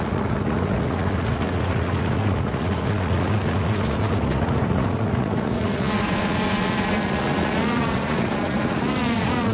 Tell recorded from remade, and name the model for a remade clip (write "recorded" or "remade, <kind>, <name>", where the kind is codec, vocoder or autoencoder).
remade, vocoder, Vocos